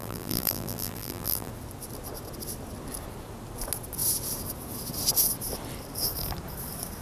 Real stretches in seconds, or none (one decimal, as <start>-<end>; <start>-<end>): 1.5-7.0